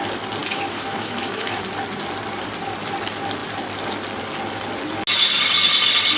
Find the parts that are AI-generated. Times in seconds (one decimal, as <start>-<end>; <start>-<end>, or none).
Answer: 0.4-1.6